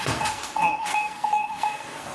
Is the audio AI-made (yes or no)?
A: yes